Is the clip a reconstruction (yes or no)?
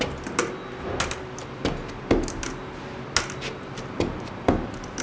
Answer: no